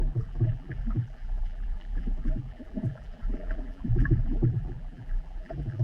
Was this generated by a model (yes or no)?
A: yes